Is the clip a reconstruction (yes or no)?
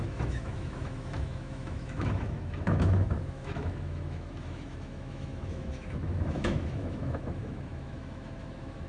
yes